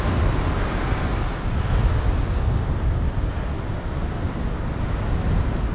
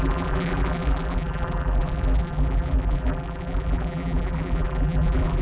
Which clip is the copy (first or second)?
second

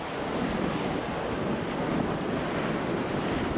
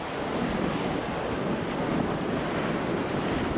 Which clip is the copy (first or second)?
second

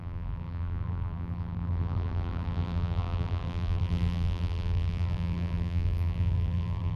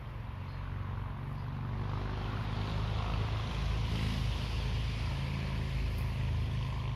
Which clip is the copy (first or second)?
first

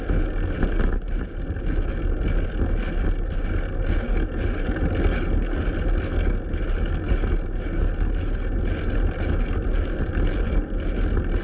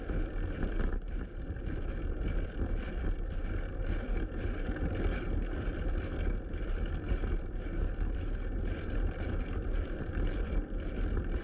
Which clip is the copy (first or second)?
second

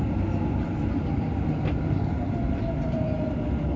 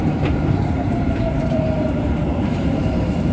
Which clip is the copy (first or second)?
second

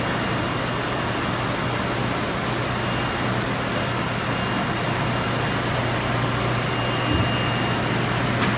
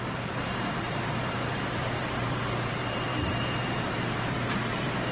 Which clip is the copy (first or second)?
second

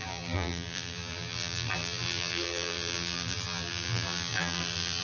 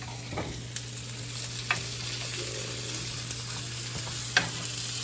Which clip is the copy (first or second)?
first